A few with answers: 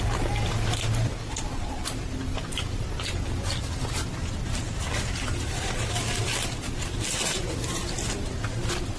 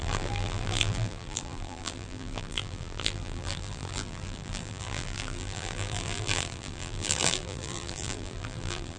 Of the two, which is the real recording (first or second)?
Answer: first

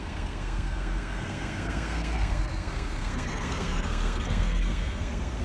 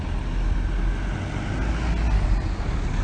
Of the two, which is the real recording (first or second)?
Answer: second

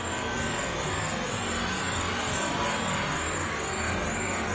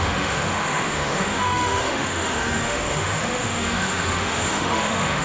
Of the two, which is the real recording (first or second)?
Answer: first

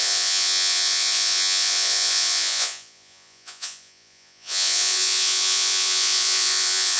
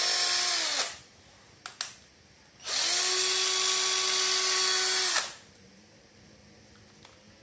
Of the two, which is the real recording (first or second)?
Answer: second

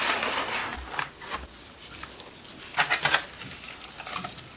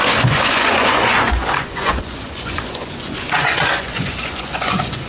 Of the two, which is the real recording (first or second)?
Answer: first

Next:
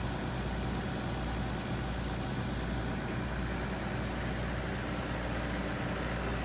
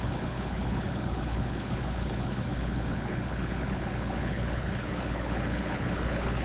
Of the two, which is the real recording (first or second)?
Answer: first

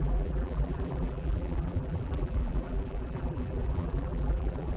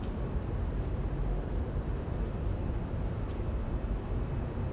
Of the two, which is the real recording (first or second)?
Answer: second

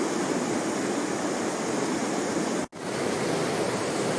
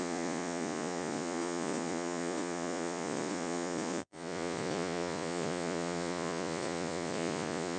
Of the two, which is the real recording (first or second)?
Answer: first